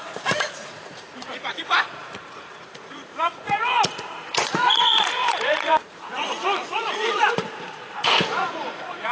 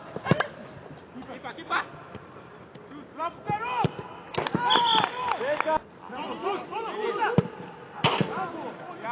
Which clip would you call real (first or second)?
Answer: second